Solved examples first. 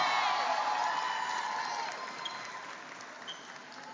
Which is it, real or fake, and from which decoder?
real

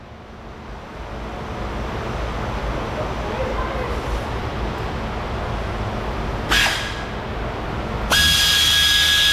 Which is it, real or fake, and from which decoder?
real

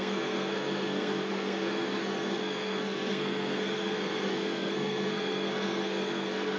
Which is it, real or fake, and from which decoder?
fake, codec, SNAC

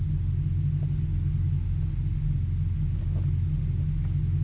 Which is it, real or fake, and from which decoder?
real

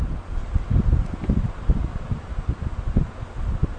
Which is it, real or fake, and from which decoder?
real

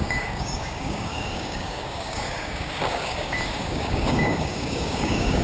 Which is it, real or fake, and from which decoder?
fake, codec, DAC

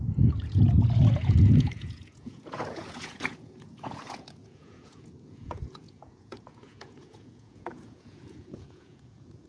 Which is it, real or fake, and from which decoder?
fake, vocoder, Vocos